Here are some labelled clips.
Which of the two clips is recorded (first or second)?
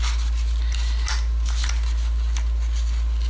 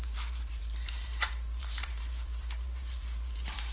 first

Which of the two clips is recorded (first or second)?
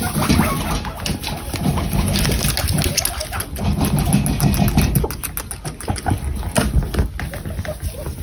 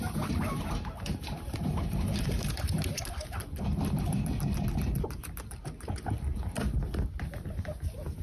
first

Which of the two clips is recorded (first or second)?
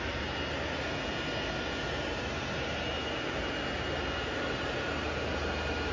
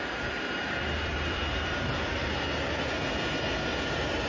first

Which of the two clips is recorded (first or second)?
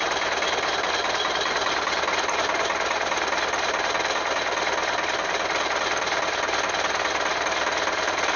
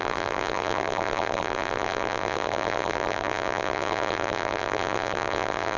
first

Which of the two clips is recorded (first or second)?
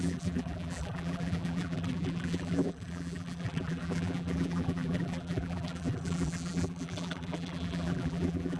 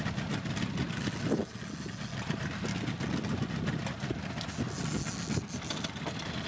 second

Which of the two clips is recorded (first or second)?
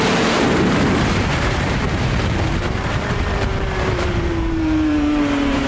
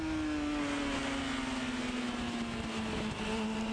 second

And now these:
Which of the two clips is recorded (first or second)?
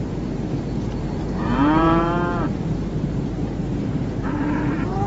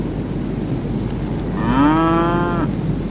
second